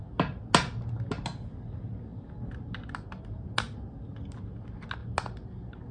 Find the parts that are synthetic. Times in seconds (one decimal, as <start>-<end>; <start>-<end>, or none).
none